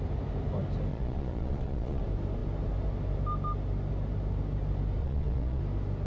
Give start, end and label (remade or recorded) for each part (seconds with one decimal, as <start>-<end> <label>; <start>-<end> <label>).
0.0-0.9 recorded; 0.9-2.0 remade; 2.0-5.0 recorded; 5.0-5.6 remade; 5.6-6.1 recorded

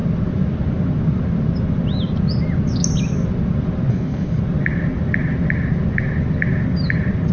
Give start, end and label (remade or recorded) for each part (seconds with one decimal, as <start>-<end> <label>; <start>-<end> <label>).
0.0-3.9 recorded; 3.9-4.4 remade; 4.4-7.3 recorded

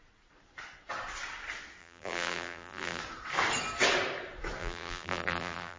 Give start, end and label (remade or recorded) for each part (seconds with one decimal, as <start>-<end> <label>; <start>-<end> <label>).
0.0-1.8 recorded; 1.8-3.0 remade; 3.0-4.6 recorded; 4.6-5.8 remade

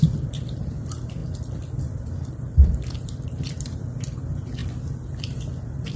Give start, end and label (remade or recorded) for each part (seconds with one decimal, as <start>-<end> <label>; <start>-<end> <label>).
0.0-4.6 remade; 4.6-5.4 recorded; 5.4-6.0 remade

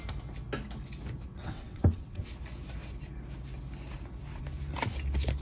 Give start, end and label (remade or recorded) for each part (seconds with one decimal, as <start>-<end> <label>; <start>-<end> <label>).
0.0-1.3 recorded; 1.3-2.2 remade; 2.2-5.4 recorded

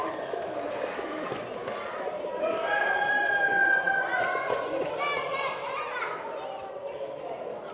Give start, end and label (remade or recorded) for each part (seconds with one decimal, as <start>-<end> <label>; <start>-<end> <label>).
0.0-3.5 recorded; 3.5-4.9 remade; 4.9-7.7 recorded